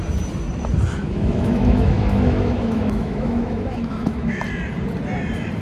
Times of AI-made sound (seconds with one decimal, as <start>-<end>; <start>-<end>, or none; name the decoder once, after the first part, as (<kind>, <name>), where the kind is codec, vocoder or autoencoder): 1.0-4.4 (autoencoder, DAC-VAE)